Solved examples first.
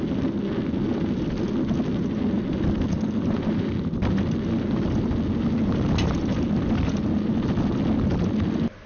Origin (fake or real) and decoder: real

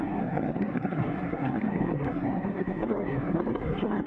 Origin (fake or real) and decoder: fake, codec, SNAC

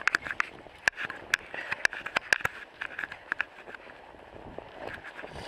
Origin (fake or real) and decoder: real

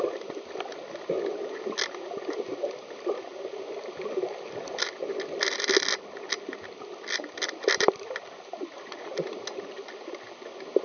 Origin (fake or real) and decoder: real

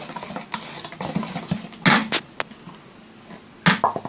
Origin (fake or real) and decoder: real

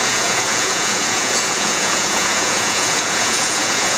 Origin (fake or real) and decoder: fake, vocoder, Vocos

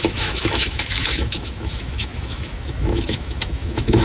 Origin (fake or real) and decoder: fake, autoencoder, DAC-VAE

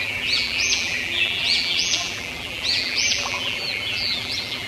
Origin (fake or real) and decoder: fake, vocoder, BigVGAN v2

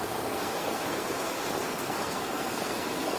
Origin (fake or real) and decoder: fake, codec, SNAC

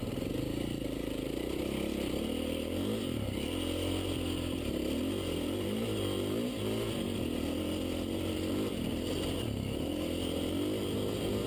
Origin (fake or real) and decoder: real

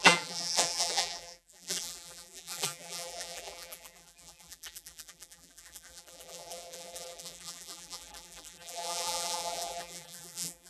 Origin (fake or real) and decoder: fake, vocoder, BigVGAN v2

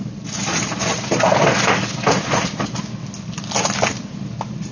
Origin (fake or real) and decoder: real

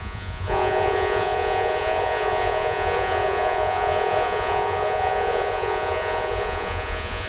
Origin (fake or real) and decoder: fake, vocoder, Vocos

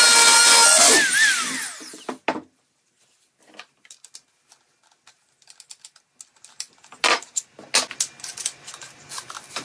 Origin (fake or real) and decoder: real